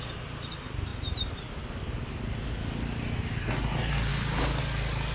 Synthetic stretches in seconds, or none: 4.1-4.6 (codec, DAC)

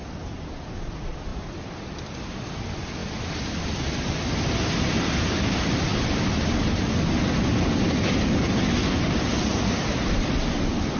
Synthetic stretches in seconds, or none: none

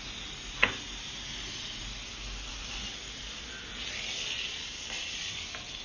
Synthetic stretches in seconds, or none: 4.6-5.1 (codec, DAC)

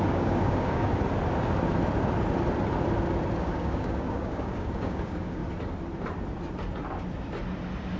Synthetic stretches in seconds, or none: 0.0-0.9 (codec, DAC); 3.4-5.4

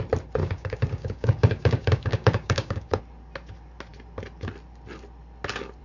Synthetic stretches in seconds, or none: 0.4-3.0 (codec, DAC)

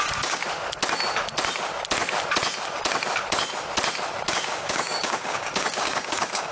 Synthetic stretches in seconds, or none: 0.0-0.4 (codec, DAC); 4.3-6.5

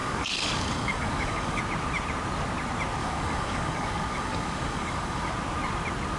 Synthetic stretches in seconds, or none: 0.0-1.6 (codec, DAC); 3.0-5.3

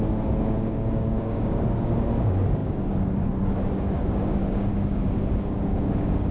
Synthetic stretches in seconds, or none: 0.0-6.3 (codec, DAC)